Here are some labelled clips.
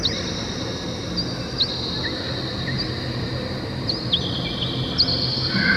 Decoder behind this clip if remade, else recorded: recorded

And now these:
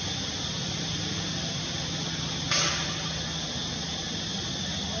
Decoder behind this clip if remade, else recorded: recorded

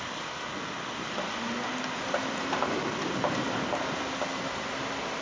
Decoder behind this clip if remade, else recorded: recorded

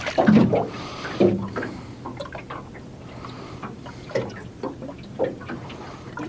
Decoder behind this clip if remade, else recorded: recorded